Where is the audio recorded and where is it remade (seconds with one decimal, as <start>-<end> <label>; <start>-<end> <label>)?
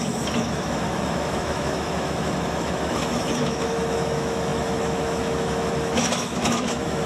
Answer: 0.0-7.1 remade